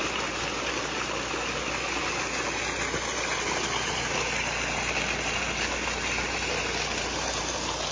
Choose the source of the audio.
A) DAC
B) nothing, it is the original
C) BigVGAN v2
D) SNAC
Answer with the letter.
B